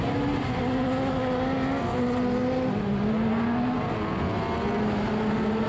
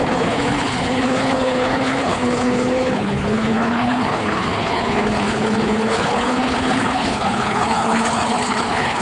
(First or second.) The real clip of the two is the first